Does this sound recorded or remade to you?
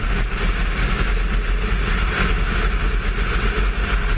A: recorded